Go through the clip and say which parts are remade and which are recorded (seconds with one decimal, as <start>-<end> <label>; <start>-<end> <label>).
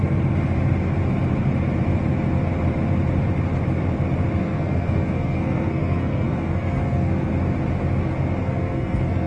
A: 0.0-4.4 recorded; 4.4-7.3 remade; 7.3-8.4 recorded; 8.4-9.3 remade